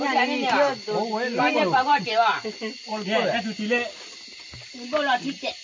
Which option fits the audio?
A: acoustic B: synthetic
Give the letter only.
A